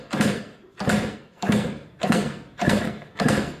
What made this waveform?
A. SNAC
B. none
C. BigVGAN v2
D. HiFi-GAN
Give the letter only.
A